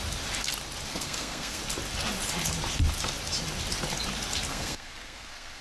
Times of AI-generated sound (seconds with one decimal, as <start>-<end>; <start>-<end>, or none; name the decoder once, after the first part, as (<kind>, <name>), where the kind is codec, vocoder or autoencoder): 0.9-1.6 (codec, SNAC); 4.5-5.6